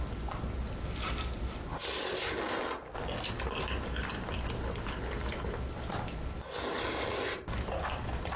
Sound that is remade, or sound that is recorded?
recorded